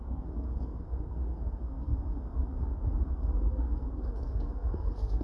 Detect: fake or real fake